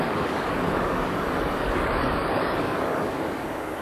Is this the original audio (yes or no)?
no